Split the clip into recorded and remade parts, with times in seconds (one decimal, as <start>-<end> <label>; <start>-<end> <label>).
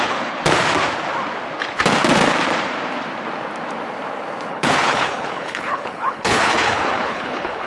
0.0-0.4 remade; 0.4-4.5 recorded; 4.5-7.7 remade